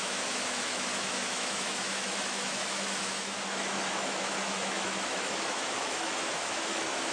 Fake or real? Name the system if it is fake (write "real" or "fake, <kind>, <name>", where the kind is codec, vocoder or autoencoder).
fake, autoencoder, DAC-VAE